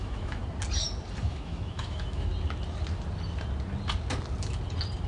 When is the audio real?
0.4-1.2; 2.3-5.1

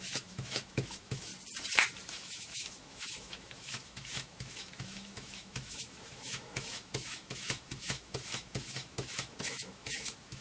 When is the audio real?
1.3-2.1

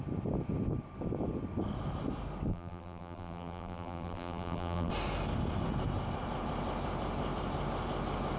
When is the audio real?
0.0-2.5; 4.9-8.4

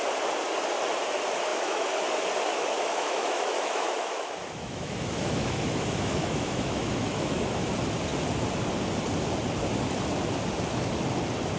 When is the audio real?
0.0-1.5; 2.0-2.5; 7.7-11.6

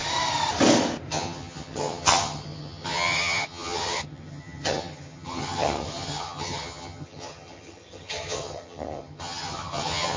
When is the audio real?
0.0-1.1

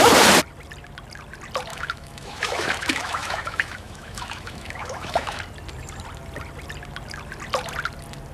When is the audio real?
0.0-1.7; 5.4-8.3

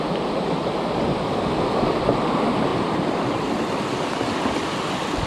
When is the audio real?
0.0-2.7; 3.8-5.3

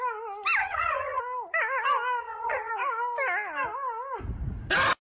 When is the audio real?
0.0-0.6; 1.2-2.2; 2.7-5.0